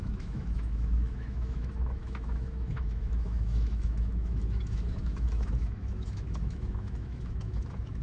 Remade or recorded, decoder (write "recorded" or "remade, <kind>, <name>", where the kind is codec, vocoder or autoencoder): remade, autoencoder, DAC-VAE